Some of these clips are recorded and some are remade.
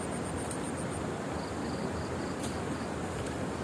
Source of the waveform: recorded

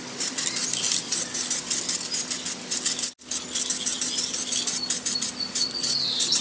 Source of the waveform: recorded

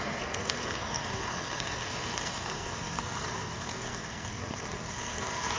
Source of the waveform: remade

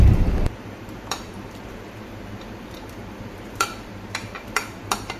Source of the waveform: remade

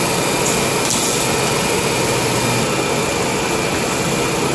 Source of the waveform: recorded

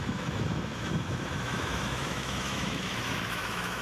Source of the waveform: remade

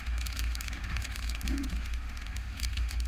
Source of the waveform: remade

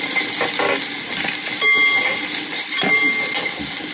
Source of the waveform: recorded